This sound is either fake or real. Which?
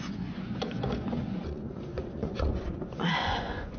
fake